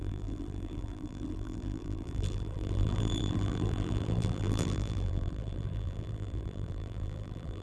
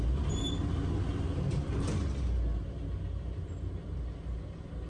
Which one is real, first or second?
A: second